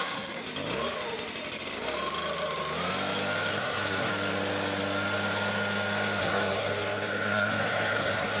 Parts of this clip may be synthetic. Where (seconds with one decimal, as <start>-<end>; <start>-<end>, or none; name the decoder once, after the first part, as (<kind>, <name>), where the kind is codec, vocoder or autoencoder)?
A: 0.0-0.4 (codec, SNAC); 3.5-4.1; 6.2-8.4